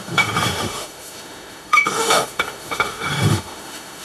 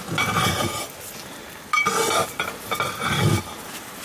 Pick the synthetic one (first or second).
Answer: first